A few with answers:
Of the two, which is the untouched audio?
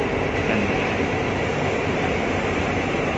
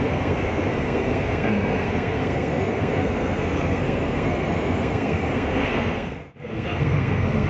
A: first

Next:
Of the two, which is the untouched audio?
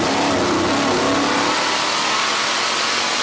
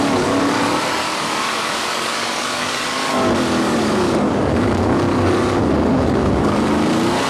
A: first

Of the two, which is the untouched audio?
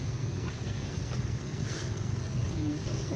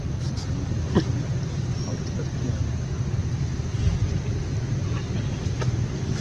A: second